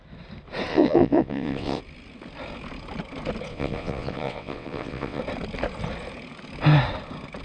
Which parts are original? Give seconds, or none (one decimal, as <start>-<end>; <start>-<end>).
0.0-0.7; 1.8-3.5; 5.2-7.4